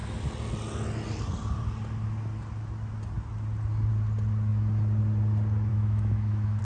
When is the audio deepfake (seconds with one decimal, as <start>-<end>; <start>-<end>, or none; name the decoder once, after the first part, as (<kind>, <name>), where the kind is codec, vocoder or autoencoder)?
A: 5.7-6.6 (autoencoder, DAC-VAE)